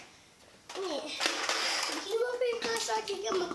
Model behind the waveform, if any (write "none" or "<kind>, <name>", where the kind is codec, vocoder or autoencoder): none